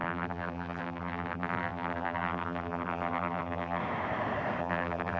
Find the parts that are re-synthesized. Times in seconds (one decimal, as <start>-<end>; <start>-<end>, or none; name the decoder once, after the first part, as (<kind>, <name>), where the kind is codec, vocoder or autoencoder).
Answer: 0.0-3.8 (vocoder, BigVGAN v2); 4.6-5.2